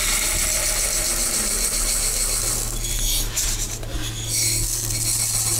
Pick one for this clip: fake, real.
real